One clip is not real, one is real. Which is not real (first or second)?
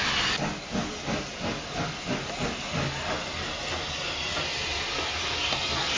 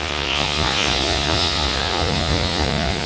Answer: second